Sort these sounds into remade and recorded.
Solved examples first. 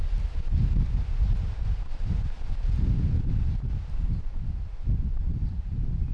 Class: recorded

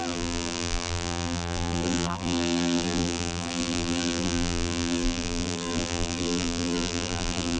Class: remade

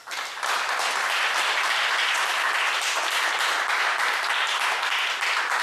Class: recorded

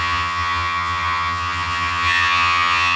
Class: remade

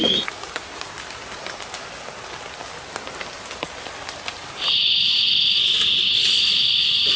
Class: recorded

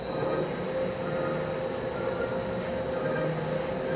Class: recorded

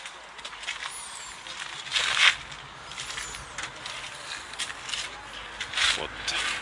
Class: recorded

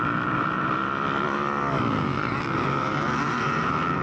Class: recorded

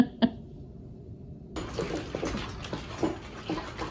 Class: recorded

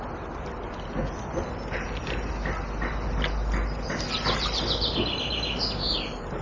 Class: recorded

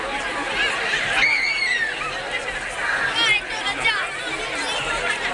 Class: recorded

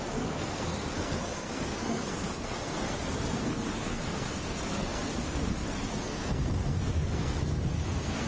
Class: remade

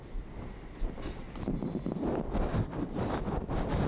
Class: recorded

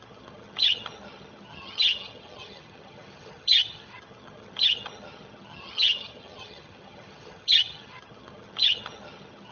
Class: remade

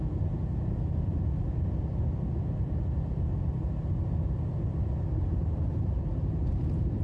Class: recorded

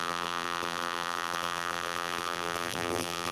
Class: remade